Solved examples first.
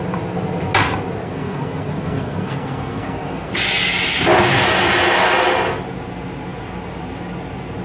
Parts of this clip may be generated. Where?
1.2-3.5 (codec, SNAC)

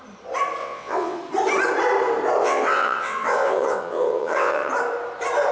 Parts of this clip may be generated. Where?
0.6-1.2 (vocoder, WaveNeXt); 2.4-4.7

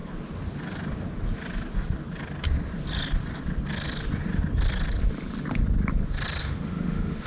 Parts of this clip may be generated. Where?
6.4-7.3 (autoencoder, DAC-VAE)